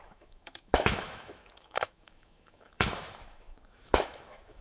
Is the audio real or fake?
fake